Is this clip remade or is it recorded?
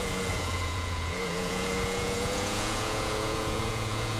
remade